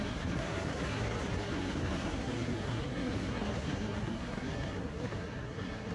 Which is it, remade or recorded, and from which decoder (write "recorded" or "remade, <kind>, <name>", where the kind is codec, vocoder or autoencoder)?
remade, codec, SNAC